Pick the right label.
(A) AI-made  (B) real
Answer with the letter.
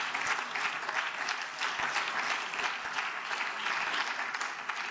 B